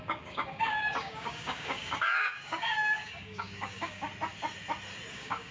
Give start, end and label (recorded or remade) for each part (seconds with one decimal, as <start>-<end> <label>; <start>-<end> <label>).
0.0-4.1 remade; 4.1-5.1 recorded; 5.1-5.5 remade